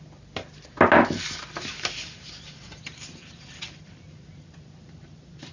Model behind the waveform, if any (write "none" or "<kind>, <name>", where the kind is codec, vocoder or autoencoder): none